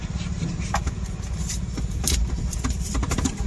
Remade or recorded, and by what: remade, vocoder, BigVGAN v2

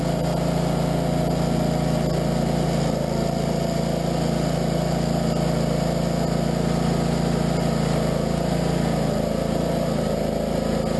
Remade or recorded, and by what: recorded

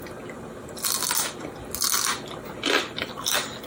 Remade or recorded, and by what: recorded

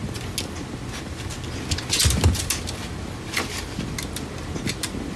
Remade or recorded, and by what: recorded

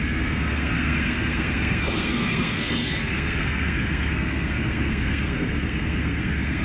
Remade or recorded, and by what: remade, codec, SNAC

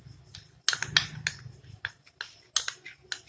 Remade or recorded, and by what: recorded